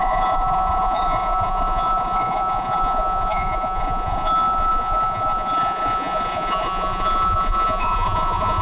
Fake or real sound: fake